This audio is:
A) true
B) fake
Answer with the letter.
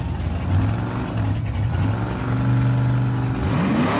A